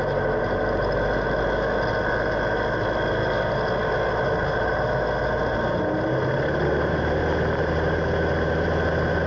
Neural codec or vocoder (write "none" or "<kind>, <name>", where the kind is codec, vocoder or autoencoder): none